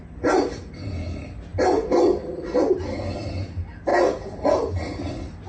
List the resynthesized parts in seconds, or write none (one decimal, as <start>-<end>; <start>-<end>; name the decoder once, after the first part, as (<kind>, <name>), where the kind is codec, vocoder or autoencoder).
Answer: none